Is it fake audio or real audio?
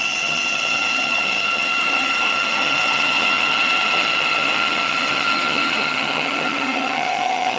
fake